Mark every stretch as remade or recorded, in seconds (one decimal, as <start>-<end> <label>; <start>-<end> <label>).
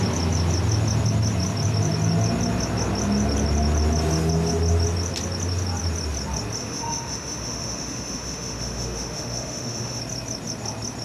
0.0-6.6 recorded; 6.6-10.0 remade; 10.0-11.0 recorded